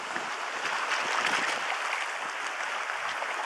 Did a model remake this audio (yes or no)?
no